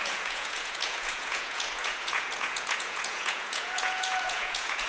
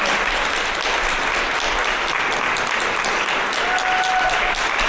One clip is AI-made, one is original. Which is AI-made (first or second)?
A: first